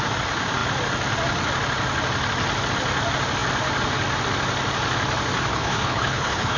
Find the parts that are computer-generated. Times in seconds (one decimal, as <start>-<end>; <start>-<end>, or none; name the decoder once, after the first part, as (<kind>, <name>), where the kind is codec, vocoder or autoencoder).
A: 5.5-6.6 (codec, HILCodec)